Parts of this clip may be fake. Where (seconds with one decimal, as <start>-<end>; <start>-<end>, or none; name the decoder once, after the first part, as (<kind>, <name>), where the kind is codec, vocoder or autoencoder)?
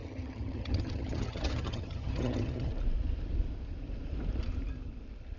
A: 0.0-2.7 (vocoder, HiFi-GAN)